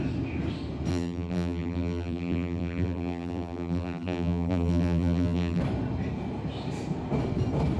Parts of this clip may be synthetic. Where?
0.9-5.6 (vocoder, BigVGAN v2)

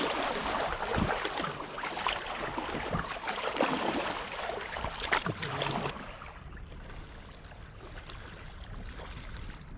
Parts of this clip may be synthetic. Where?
none